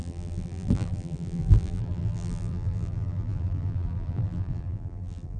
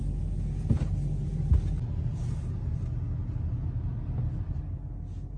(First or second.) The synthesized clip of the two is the first